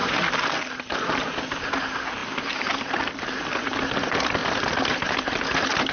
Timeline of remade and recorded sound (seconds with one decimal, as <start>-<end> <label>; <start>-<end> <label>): 0.0-5.9 remade